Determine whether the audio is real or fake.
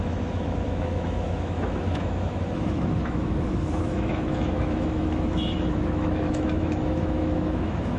fake